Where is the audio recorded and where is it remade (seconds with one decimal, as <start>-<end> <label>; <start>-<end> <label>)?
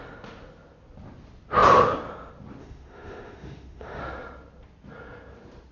0.0-2.6 recorded; 2.6-4.0 remade; 4.0-5.7 recorded